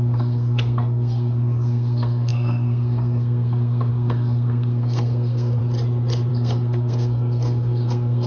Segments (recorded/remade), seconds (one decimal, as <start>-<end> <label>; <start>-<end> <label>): 0.0-5.6 remade; 5.6-6.3 recorded; 6.3-8.3 remade